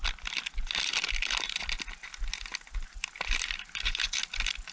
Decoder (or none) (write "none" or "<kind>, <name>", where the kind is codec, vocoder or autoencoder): vocoder, BigVGAN v2